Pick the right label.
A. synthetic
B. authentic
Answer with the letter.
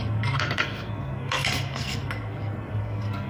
A